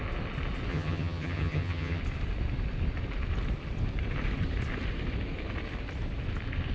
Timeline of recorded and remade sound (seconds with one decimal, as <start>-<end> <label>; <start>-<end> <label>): 0.0-0.7 recorded; 0.7-2.0 remade; 2.0-6.7 recorded